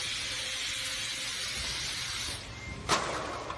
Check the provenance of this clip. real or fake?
real